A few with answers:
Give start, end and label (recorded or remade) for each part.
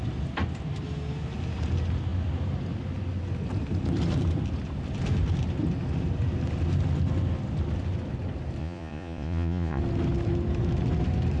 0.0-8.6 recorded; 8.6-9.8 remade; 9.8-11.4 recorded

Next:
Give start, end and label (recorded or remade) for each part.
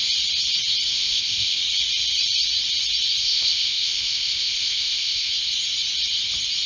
0.0-0.9 recorded; 0.9-1.6 remade; 1.6-3.2 recorded; 3.2-5.3 remade; 5.3-6.7 recorded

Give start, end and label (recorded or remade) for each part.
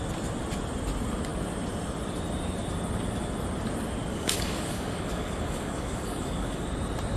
0.0-4.1 recorded; 4.1-6.7 remade; 6.7-7.2 recorded